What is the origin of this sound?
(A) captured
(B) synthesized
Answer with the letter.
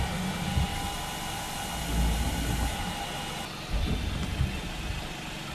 A